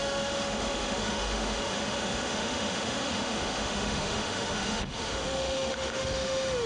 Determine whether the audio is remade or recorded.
remade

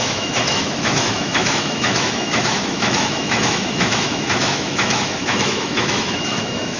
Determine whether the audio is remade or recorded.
remade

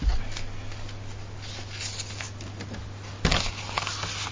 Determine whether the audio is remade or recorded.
recorded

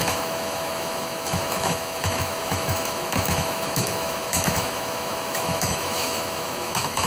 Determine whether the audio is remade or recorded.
remade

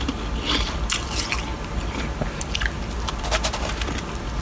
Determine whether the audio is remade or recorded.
recorded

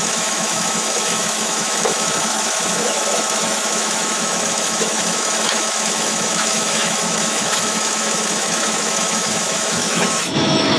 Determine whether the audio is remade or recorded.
remade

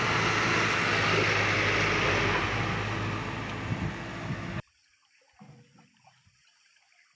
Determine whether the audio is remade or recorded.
recorded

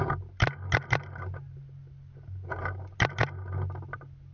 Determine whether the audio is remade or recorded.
recorded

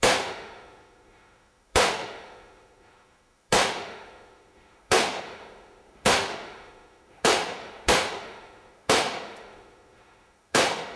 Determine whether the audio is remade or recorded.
remade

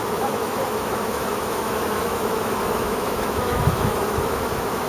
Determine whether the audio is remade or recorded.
remade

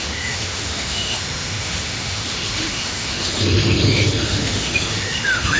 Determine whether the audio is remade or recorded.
remade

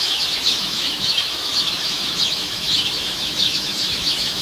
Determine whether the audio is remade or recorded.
remade